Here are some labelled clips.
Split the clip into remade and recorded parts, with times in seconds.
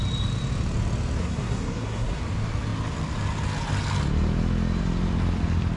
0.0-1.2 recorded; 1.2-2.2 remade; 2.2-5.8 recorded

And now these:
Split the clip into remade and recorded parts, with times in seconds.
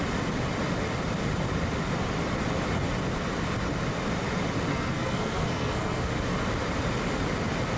0.0-4.7 recorded; 4.7-6.1 remade; 6.1-7.8 recorded